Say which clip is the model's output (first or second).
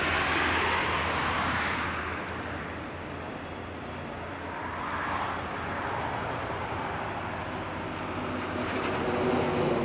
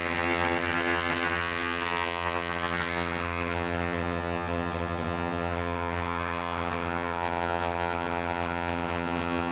second